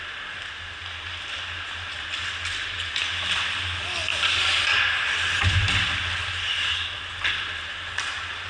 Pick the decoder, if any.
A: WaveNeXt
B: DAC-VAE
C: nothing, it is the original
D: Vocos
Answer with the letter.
C